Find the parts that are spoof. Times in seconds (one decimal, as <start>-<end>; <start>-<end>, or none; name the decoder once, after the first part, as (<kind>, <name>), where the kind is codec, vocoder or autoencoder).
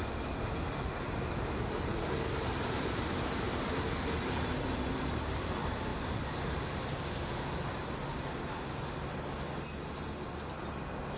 none